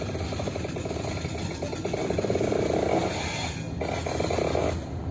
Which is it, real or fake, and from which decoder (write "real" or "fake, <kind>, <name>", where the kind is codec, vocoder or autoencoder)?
real